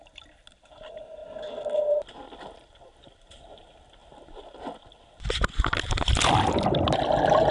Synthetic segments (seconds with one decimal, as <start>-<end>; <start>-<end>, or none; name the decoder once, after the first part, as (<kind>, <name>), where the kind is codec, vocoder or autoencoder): none